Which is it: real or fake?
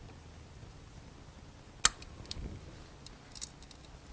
real